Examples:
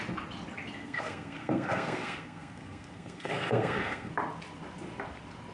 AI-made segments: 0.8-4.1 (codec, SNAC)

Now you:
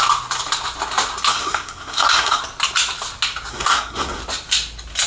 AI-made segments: 1.3-2.4 (codec, SNAC); 3.5-4.2

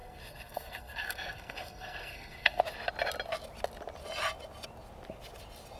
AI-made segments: 0.0-2.6 (codec, SNAC)

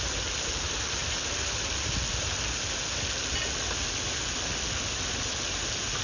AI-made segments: none

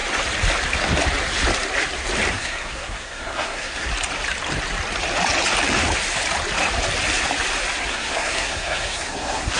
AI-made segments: 2.3-3.9 (codec, SNAC); 7.9-9.6

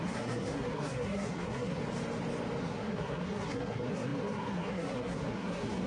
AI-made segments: 0.0-1.8 (codec, SNAC); 2.6-5.9